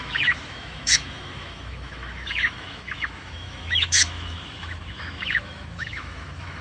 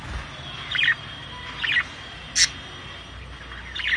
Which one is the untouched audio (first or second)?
second